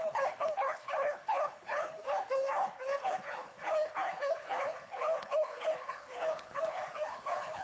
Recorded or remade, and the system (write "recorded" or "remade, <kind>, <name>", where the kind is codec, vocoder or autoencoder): remade, codec, HILCodec